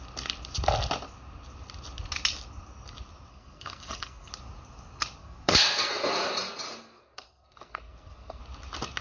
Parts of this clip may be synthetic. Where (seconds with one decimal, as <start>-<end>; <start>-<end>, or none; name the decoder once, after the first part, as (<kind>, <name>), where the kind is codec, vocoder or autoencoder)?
3.3-4.3 (codec, SNAC); 5.2-5.9; 6.8-8.4